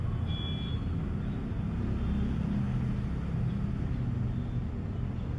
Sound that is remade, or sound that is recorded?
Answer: recorded